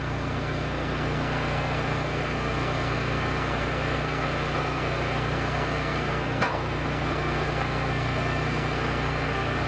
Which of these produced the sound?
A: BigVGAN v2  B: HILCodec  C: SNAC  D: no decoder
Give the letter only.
C